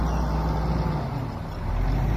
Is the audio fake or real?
real